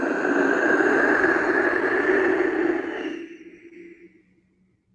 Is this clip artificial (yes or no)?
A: no